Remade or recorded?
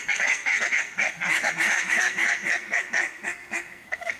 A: remade